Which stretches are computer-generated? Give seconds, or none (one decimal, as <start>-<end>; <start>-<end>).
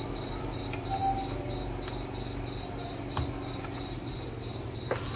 none